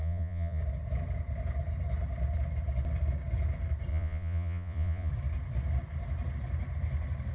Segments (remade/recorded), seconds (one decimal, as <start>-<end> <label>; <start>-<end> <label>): 0.0-0.6 remade; 0.6-3.9 recorded; 3.9-5.1 remade; 5.1-7.3 recorded